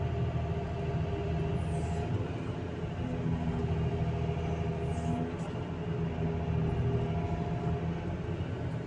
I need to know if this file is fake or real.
real